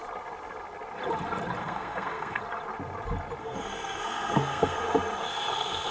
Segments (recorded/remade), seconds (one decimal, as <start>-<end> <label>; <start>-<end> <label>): 0.0-1.6 recorded; 1.6-2.4 remade; 2.4-3.4 recorded; 3.4-4.8 remade; 4.8-5.3 recorded; 5.3-5.9 remade